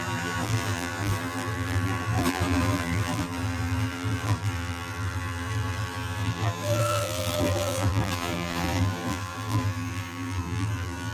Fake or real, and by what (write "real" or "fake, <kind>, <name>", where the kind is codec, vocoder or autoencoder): fake, vocoder, BigVGAN v2